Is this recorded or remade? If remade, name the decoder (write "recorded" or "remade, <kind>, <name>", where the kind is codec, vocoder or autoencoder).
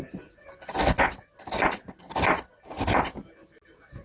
recorded